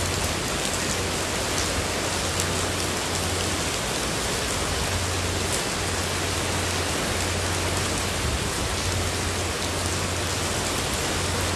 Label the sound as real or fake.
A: real